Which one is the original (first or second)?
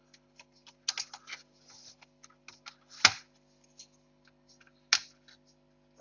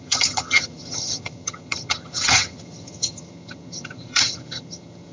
first